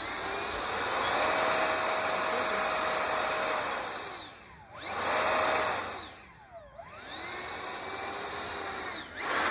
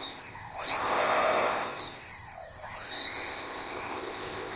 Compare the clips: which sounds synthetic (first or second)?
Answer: second